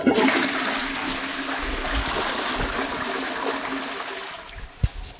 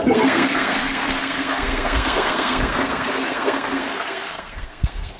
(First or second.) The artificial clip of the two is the second